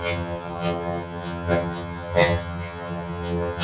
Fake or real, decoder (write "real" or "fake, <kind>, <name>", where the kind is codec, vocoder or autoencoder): fake, vocoder, HiFi-GAN